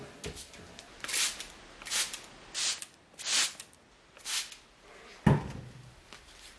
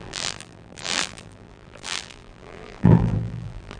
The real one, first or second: first